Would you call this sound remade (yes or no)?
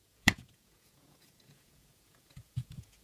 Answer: yes